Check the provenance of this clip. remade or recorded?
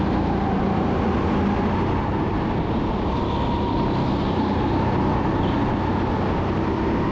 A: recorded